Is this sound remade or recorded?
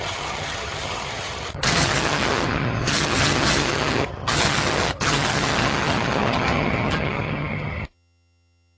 remade